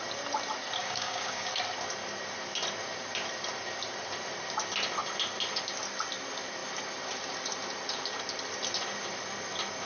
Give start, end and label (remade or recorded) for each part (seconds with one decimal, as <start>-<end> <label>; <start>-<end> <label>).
0.0-0.8 recorded; 0.8-1.5 remade; 1.5-9.9 recorded